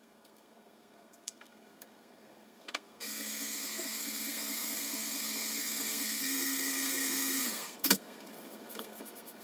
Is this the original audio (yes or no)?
no